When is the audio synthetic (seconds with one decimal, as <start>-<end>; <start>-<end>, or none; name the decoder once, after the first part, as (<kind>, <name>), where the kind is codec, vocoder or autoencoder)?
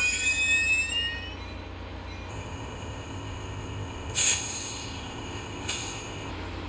2.3-6.3 (codec, ZipCodec)